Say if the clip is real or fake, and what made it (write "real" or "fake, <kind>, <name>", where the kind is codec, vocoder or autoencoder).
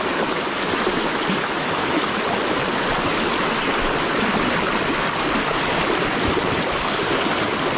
real